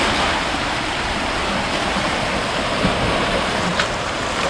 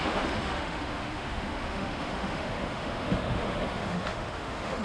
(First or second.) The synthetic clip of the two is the second